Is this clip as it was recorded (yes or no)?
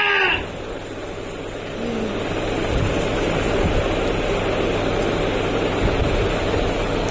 yes